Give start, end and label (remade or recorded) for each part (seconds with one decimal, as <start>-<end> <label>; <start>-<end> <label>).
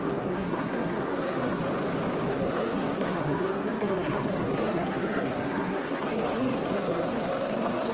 0.0-1.6 remade; 1.6-2.3 recorded; 2.3-7.9 remade